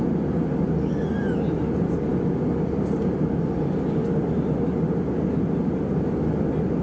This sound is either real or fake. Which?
real